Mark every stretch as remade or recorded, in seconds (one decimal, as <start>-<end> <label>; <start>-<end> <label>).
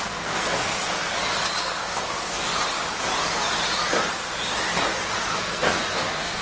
0.0-0.7 remade; 0.7-1.6 recorded; 1.6-2.5 remade; 2.5-5.4 recorded; 5.4-6.4 remade